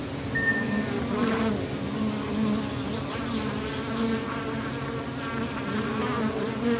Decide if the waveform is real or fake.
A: real